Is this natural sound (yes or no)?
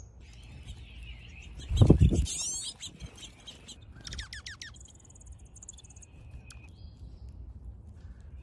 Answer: yes